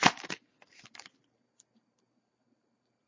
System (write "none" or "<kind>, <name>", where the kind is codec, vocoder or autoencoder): vocoder, BigVGAN v2